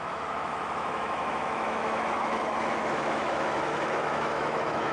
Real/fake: fake